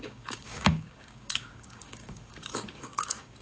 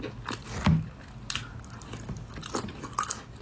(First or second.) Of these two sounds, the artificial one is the first